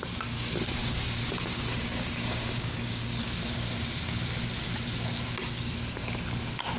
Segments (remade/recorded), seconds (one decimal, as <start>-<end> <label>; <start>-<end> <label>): 0.0-0.8 recorded; 0.8-3.2 remade; 3.2-6.8 recorded

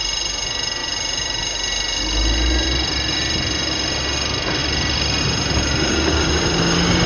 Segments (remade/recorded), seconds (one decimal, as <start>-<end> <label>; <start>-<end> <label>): 0.0-7.1 recorded

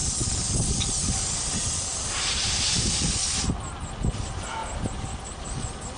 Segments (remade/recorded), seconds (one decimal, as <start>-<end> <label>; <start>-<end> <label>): 0.0-2.2 remade; 2.2-6.0 recorded

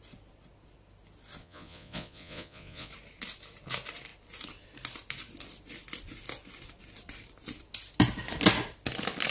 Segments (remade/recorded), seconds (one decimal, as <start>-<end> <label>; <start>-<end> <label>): 0.0-1.4 recorded; 1.4-2.9 remade; 2.9-9.3 recorded

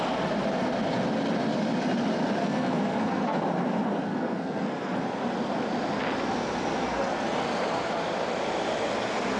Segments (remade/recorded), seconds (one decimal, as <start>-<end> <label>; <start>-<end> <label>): 0.0-2.4 recorded; 2.4-3.4 remade; 3.4-4.1 recorded; 4.1-5.0 remade; 5.0-9.4 recorded

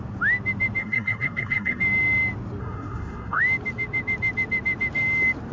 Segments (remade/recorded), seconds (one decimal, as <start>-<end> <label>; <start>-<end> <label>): 0.0-0.8 recorded; 0.8-1.8 remade; 1.8-2.6 recorded; 2.6-3.4 remade; 3.4-5.5 recorded

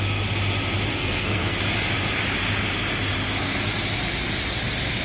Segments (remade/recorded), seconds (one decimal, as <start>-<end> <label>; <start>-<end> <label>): 0.0-0.9 recorded; 0.9-1.6 remade; 1.6-5.0 recorded

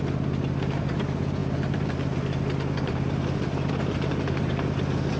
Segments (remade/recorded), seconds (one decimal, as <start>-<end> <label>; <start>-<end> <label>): 0.0-5.2 recorded